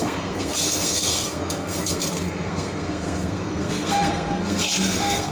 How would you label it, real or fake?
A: fake